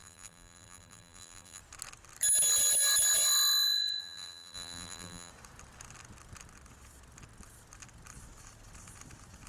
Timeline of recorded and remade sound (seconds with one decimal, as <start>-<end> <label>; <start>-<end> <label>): 0.0-1.6 remade; 1.6-4.0 recorded; 4.0-5.3 remade; 5.3-9.5 recorded

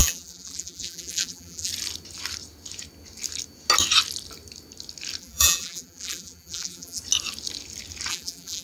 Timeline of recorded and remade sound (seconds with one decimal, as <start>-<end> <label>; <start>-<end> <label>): 0.0-1.7 remade; 1.7-5.2 recorded; 5.2-7.0 remade; 7.0-8.1 recorded; 8.1-8.6 remade

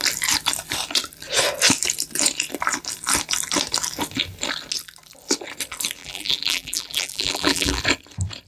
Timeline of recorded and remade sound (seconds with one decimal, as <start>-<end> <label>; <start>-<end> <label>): 0.0-6.0 recorded; 6.0-7.8 remade; 7.8-8.5 recorded

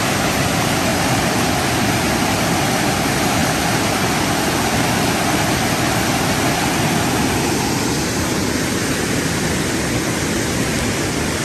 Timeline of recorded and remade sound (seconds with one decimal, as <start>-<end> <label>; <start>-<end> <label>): 0.0-0.9 recorded; 0.9-1.5 remade; 1.5-3.4 recorded; 3.4-4.1 remade; 4.1-11.4 recorded

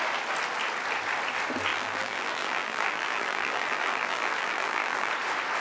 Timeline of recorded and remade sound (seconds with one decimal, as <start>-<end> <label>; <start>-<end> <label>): 0.0-1.7 recorded; 1.7-5.1 remade; 5.1-5.6 recorded

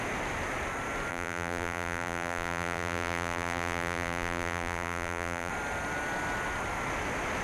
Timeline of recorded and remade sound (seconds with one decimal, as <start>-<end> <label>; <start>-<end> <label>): 0.0-1.1 recorded; 1.1-5.5 remade; 5.5-7.4 recorded